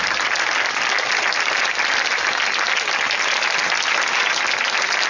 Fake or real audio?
real